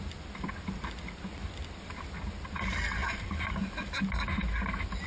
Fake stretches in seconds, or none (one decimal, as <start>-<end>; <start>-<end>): 3.0-4.0